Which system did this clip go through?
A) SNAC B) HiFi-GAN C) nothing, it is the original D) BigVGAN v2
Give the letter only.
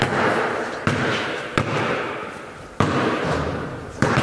D